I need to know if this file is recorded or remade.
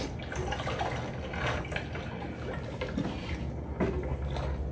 recorded